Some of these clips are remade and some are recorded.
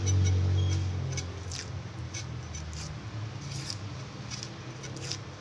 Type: recorded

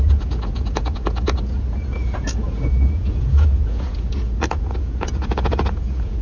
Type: remade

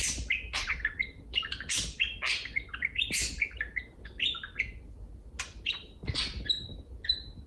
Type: recorded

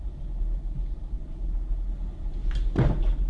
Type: recorded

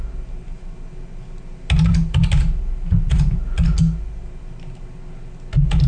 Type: recorded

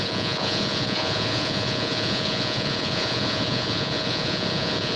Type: remade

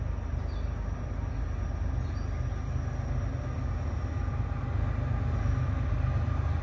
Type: recorded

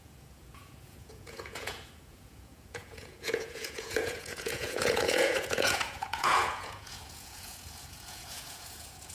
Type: remade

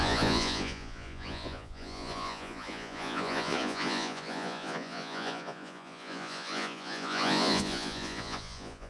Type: remade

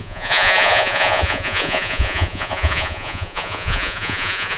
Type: remade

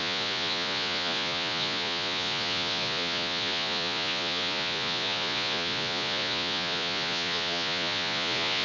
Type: remade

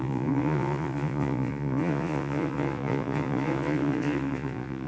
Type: remade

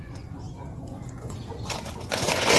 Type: remade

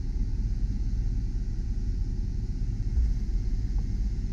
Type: remade